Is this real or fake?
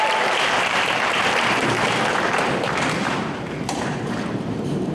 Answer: fake